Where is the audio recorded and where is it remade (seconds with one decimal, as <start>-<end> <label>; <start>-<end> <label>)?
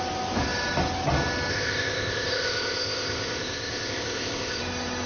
0.0-1.5 recorded; 1.5-4.6 remade; 4.6-5.1 recorded